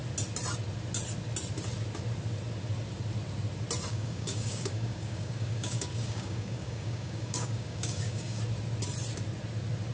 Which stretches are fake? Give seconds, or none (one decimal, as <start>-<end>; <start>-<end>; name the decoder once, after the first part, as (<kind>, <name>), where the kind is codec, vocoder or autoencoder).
3.9-8.4 (codec, DAC)